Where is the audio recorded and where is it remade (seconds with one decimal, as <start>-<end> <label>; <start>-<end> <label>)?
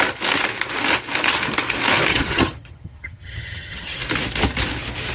0.0-2.1 recorded; 2.1-4.0 remade; 4.0-5.1 recorded